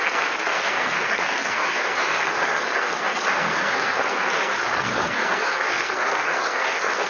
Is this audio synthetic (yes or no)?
yes